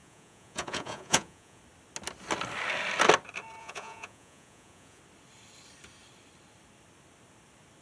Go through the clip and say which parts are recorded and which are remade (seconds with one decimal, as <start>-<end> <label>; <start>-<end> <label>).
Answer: 0.0-1.6 remade; 1.6-3.6 recorded; 3.6-5.0 remade; 5.0-7.8 recorded